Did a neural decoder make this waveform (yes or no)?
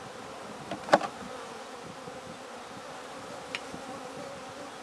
no